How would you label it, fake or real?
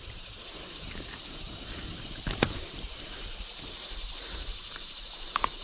fake